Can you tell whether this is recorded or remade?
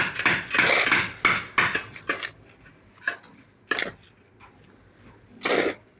recorded